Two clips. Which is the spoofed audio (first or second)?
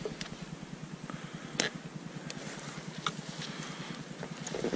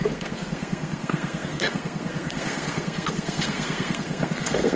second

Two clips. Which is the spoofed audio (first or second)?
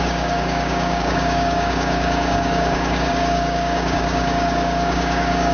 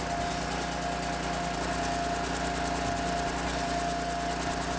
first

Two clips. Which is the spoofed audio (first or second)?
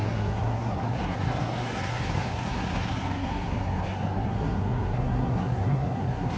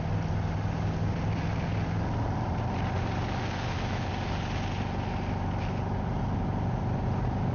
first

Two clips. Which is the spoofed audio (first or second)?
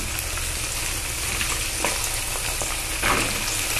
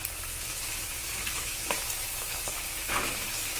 second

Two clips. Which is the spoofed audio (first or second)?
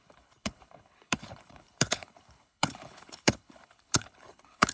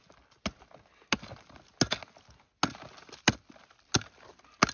first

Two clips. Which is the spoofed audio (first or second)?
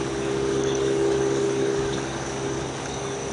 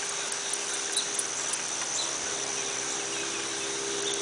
first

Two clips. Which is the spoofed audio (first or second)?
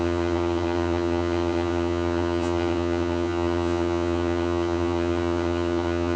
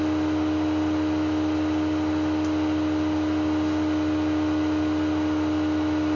first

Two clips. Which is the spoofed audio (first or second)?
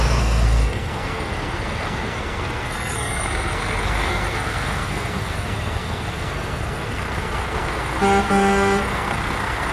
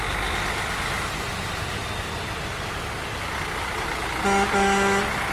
first